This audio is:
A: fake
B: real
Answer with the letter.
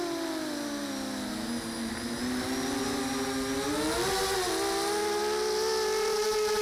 B